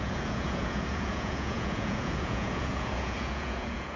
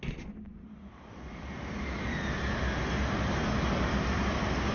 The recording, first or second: second